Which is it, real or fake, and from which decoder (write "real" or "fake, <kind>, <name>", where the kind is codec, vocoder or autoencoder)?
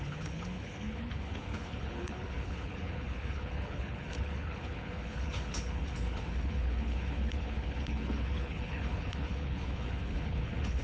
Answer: fake, codec, HILCodec